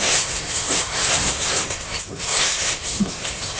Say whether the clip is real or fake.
fake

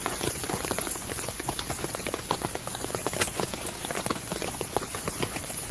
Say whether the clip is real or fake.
fake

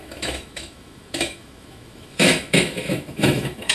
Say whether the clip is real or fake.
fake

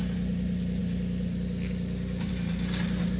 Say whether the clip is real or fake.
real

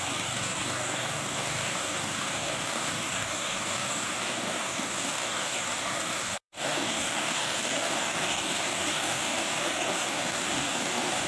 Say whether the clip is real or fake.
fake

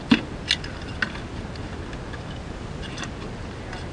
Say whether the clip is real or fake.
real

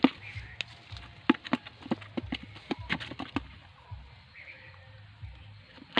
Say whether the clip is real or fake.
real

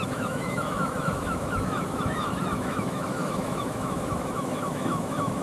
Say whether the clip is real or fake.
fake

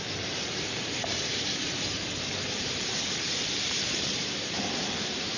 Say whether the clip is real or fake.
fake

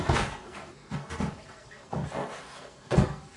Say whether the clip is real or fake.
fake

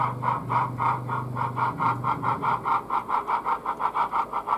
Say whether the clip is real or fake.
real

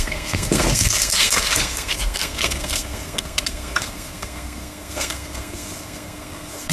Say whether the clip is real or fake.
fake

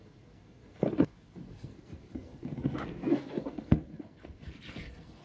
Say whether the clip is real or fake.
fake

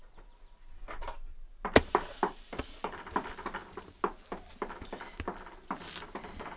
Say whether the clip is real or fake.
real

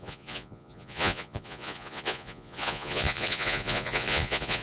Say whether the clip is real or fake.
fake